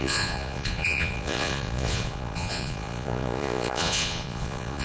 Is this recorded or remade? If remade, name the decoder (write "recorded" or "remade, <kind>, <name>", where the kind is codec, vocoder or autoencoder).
remade, vocoder, Vocos